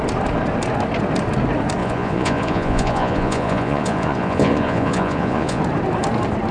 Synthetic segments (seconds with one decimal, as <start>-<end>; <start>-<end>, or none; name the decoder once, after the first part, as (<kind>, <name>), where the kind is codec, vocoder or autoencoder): 1.8-5.6 (vocoder, Vocos)